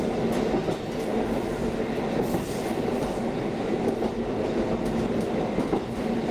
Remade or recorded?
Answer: recorded